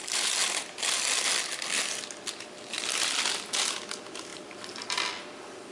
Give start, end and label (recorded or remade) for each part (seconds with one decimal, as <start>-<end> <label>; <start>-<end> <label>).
0.0-5.7 recorded